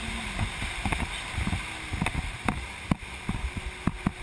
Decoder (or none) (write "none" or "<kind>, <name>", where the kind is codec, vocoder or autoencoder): none